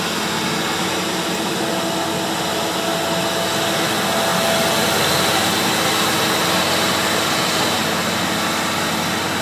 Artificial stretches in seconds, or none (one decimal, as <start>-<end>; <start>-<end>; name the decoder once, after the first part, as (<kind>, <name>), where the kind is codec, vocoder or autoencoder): none